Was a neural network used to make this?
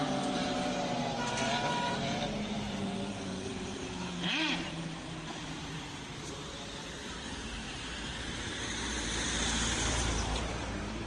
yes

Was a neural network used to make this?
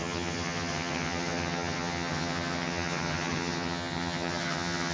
yes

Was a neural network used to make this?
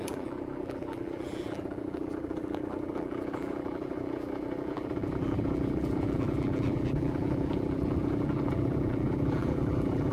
yes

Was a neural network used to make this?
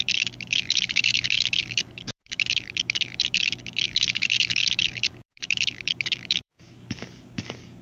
yes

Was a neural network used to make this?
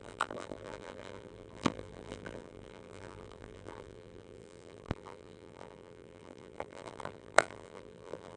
yes